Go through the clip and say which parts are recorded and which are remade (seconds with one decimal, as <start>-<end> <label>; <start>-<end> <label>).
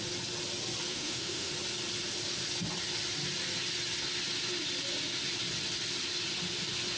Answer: 0.0-0.9 recorded; 0.9-1.5 remade; 1.5-7.0 recorded